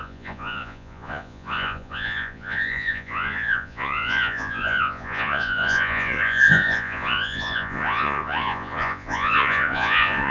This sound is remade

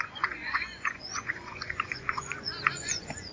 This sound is remade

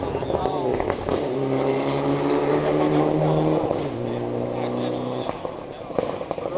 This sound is recorded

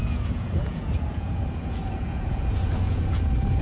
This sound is remade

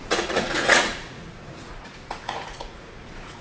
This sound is remade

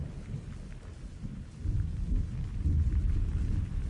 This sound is recorded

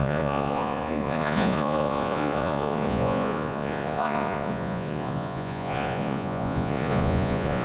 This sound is remade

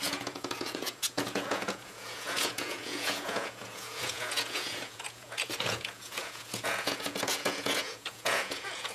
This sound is remade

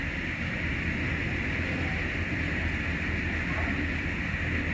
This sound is recorded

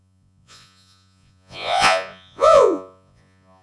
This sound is remade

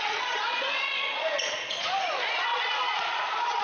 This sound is remade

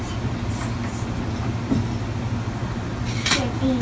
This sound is recorded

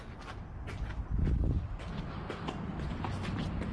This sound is recorded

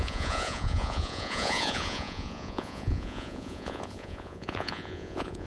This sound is remade